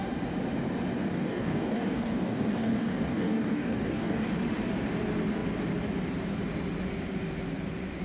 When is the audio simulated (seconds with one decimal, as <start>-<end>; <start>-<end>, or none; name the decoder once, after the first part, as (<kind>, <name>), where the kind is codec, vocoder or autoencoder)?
1.1-4.3 (codec, DAC)